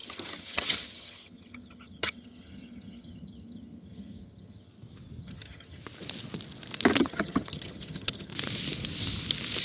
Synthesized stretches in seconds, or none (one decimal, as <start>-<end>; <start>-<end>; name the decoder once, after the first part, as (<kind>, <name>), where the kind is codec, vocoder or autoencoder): 0.0-4.7 (vocoder, HiFi-GAN); 5.2-5.8; 7.0-8.3